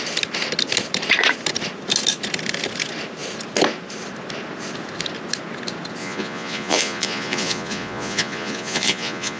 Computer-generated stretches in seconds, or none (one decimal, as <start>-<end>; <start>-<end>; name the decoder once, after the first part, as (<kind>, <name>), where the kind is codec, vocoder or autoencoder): 6.0-9.4 (vocoder, Vocos)